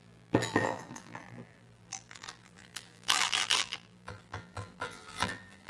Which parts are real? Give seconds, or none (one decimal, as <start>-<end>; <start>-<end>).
none